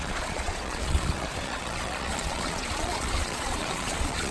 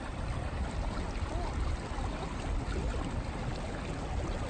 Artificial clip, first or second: first